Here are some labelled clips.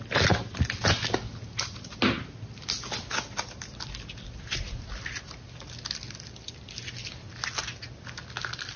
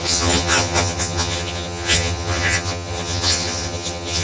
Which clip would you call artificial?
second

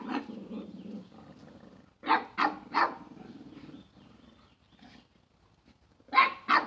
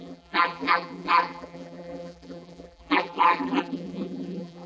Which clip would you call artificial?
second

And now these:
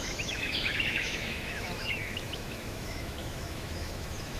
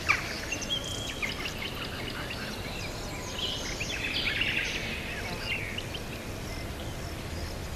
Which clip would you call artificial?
first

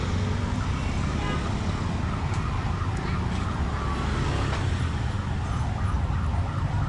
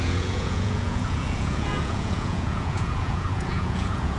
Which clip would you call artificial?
second